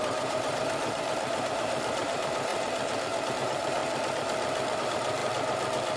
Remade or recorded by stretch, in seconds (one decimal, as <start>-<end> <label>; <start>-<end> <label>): 0.0-2.5 remade; 2.5-3.3 recorded; 3.3-3.8 remade; 3.8-4.8 recorded; 4.8-5.2 remade; 5.2-6.0 recorded